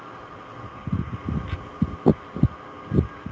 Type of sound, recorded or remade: recorded